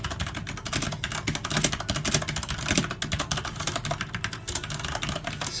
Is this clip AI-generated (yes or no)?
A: no